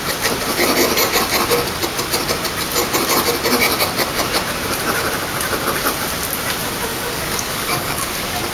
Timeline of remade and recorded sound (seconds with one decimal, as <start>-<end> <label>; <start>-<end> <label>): 0.0-6.9 recorded; 6.9-8.1 remade; 8.1-8.5 recorded